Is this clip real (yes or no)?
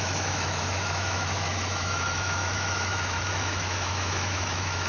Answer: no